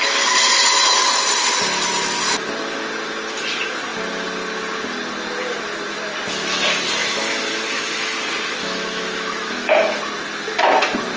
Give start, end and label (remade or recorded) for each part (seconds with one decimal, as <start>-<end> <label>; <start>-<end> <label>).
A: 0.0-7.0 recorded; 7.0-8.2 remade; 8.2-8.6 recorded; 8.6-10.0 remade; 10.0-11.2 recorded